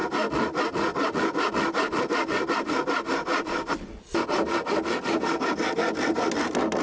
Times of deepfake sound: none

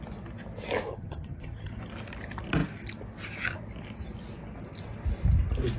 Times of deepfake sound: 0.9-1.8 (vocoder, HiFi-GAN)

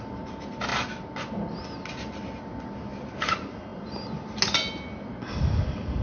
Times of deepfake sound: none